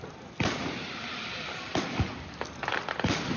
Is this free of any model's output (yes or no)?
yes